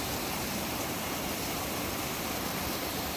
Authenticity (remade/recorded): remade